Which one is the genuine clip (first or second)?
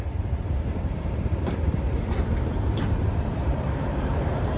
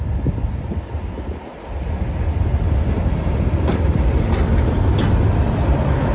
second